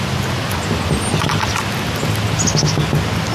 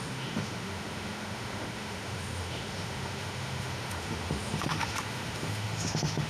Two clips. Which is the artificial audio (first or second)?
second